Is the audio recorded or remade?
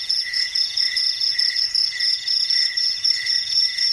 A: remade